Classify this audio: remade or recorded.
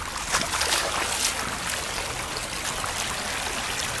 recorded